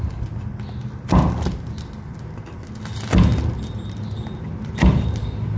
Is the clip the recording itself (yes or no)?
yes